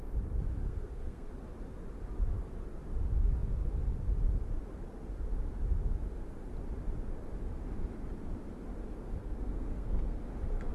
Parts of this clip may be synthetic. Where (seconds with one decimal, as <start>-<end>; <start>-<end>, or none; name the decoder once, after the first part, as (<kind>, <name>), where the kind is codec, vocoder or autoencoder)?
0.6-1.3 (codec, SNAC); 9.2-10.2